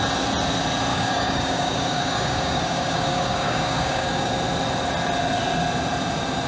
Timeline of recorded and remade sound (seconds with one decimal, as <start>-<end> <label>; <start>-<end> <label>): 0.0-0.9 recorded; 0.9-4.3 remade; 4.3-6.5 recorded